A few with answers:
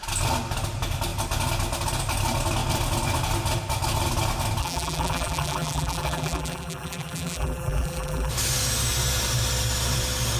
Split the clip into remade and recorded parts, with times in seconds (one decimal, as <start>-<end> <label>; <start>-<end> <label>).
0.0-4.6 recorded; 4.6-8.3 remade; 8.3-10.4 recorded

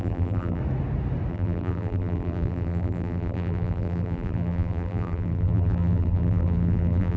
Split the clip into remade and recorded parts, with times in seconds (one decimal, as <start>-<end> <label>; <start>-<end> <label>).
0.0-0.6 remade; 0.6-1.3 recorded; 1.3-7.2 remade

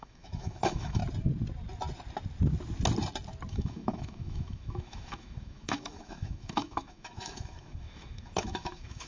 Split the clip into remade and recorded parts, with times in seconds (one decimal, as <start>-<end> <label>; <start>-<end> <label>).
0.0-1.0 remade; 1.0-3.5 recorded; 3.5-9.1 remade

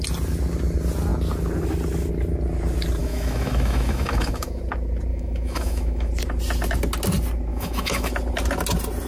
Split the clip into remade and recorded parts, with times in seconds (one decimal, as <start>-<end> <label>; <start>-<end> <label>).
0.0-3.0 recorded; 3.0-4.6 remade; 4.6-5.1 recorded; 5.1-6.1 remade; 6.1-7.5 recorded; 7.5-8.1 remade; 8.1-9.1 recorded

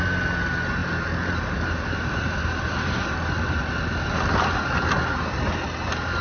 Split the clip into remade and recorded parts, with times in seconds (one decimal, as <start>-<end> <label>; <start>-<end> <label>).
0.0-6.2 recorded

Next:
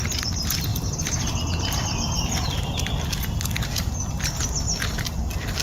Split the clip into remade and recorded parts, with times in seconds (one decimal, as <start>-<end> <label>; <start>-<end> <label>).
0.0-5.6 recorded